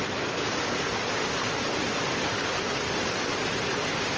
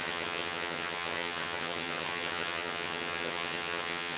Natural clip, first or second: first